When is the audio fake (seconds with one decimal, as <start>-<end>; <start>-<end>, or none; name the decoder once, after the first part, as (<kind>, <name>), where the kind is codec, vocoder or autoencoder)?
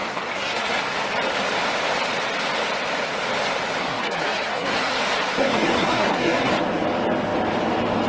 0.0-0.8 (codec, SNAC); 3.8-5.0; 5.4-6.5